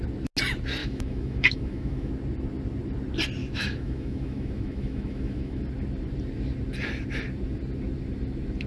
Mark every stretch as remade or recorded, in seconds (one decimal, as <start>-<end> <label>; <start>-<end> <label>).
0.0-0.8 recorded; 0.8-2.1 remade; 2.1-3.4 recorded; 3.4-5.6 remade; 5.6-8.7 recorded